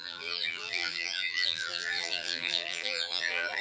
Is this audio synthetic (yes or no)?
yes